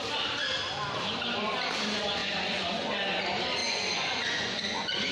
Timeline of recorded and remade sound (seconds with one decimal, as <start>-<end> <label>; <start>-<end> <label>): 0.0-2.2 recorded; 2.2-2.9 remade; 2.9-3.6 recorded; 3.6-5.1 remade